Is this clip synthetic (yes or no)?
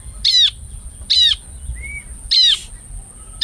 no